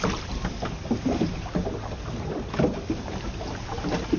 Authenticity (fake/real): real